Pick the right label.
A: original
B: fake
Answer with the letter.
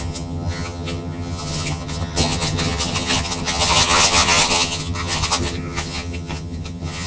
B